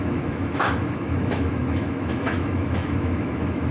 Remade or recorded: remade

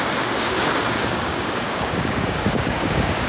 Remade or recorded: remade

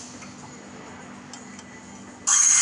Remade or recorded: recorded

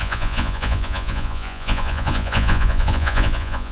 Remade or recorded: remade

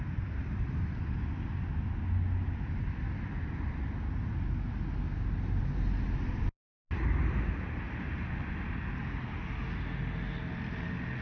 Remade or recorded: recorded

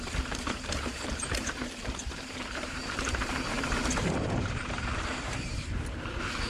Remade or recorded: remade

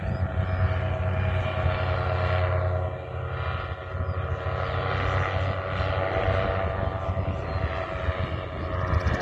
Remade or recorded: recorded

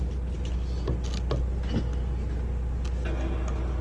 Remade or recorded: recorded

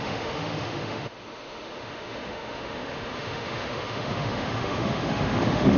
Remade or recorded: remade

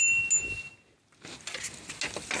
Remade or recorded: recorded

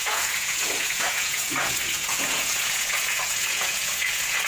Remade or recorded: remade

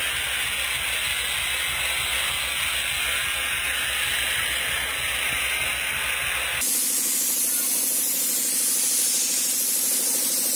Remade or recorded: recorded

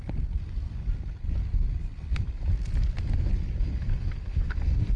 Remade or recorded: recorded